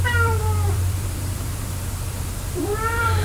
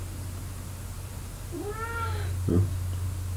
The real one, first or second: second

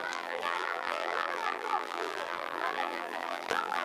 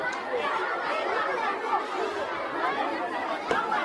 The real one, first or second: second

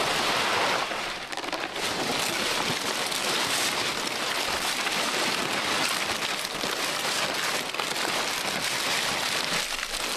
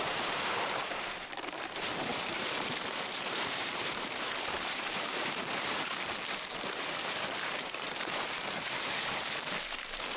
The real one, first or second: first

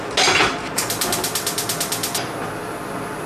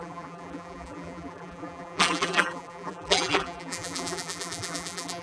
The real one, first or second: first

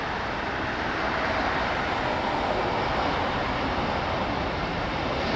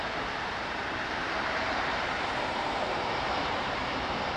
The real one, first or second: first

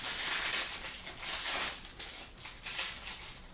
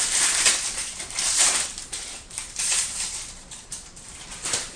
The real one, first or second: first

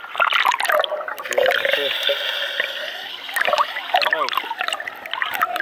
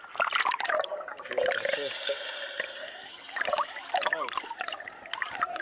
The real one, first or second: first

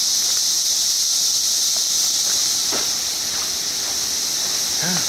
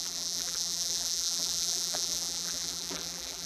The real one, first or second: first